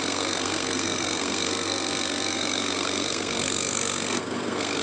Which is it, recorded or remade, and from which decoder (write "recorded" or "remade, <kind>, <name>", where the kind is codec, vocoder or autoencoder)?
remade, codec, SNAC